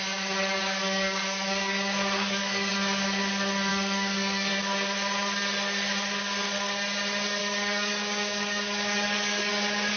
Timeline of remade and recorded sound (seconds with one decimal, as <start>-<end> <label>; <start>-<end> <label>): 0.0-0.6 recorded; 0.6-2.7 remade; 2.7-3.7 recorded; 3.7-4.5 remade; 4.5-7.4 recorded; 7.4-9.5 remade; 9.5-10.0 recorded